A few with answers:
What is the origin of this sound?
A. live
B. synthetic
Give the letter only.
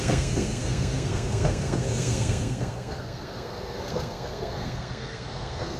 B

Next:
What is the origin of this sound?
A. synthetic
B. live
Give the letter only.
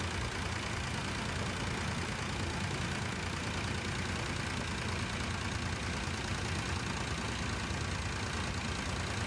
B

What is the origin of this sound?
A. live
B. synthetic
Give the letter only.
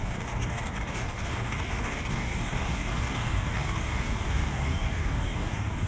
B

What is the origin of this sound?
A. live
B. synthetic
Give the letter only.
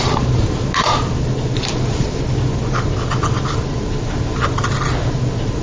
A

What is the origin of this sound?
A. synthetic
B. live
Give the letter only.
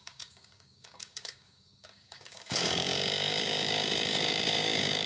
A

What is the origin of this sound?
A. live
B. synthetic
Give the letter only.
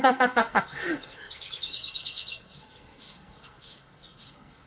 B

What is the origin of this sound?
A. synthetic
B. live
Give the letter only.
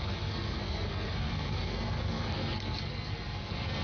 A